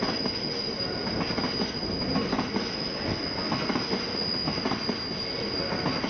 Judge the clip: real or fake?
real